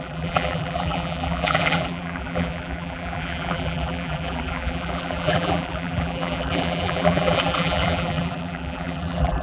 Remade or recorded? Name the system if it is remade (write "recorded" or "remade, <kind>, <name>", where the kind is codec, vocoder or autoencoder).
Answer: remade, vocoder, BigVGAN v2